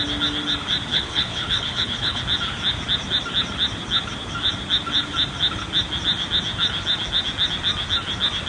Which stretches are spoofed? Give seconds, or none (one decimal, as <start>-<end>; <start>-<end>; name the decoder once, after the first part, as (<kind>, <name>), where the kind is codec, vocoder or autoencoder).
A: 0.9-2.2 (codec, HILCodec)

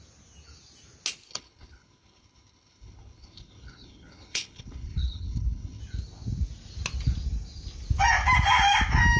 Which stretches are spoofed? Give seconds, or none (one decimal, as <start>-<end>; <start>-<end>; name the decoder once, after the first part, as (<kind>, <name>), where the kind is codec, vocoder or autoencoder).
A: 1.3-5.8 (codec, HILCodec)

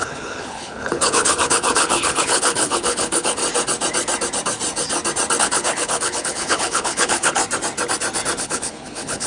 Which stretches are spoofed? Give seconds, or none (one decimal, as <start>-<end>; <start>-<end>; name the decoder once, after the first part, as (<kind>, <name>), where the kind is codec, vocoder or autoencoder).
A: 0.0-3.4 (codec, HILCodec); 5.4-7.4; 8.4-9.3